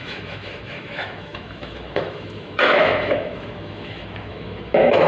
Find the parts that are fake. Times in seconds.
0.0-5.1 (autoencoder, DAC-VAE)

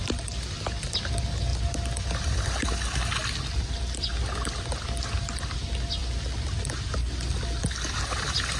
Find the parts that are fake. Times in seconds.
none